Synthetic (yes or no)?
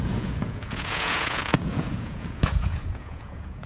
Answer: yes